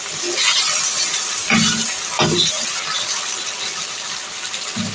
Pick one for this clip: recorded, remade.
recorded